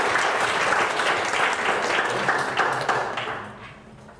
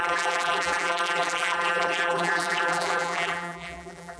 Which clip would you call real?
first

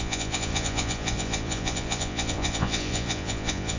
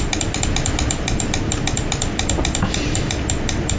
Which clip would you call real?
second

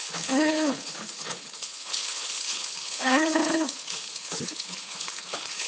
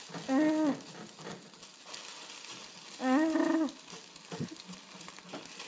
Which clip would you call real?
second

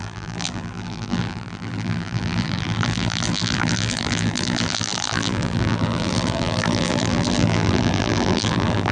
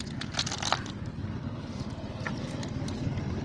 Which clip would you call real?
second